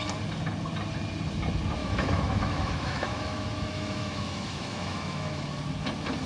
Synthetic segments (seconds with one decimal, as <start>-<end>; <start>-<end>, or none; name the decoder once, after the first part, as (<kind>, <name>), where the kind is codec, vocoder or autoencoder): 1.8-5.6 (autoencoder, DAC-VAE)